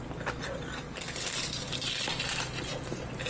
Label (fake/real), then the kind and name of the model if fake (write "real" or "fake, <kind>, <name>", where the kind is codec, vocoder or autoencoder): real